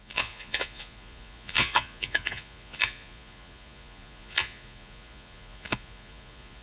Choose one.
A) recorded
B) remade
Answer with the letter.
B